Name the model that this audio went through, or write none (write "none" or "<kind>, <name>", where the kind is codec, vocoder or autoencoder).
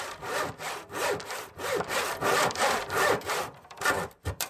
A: vocoder, BigVGAN v2